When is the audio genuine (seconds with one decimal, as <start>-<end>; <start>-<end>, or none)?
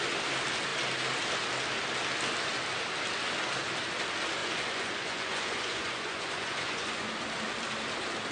0.0-4.4; 7.1-8.3